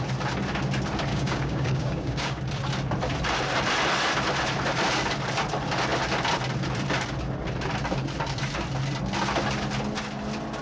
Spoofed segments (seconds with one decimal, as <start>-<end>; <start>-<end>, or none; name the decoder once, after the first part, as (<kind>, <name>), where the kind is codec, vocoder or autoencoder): 1.1-2.4 (codec, DAC)